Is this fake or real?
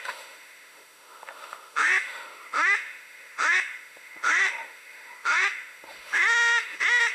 fake